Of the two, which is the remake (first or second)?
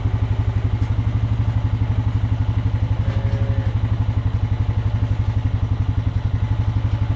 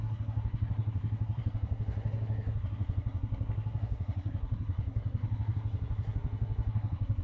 second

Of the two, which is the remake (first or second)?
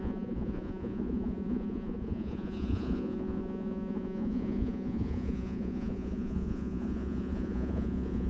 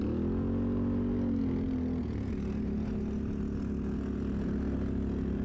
first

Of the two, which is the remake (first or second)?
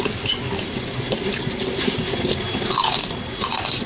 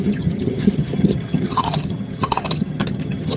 second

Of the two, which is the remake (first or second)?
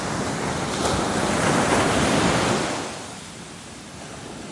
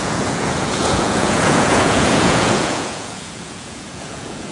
second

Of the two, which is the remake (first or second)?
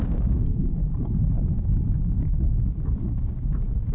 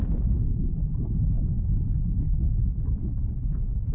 first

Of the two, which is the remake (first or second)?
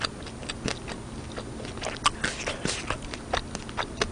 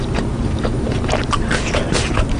second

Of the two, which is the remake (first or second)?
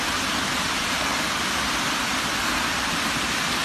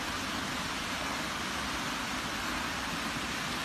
first